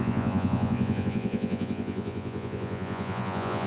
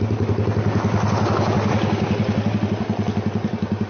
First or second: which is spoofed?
first